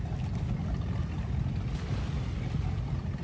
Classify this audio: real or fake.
real